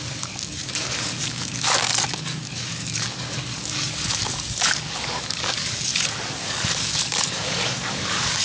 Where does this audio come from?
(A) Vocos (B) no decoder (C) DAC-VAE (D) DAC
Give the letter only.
D